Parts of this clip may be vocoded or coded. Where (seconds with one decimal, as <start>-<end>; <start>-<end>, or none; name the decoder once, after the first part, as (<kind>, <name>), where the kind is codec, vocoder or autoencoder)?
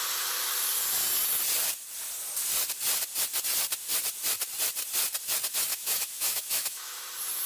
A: 5.7-7.0 (autoencoder, DAC-VAE)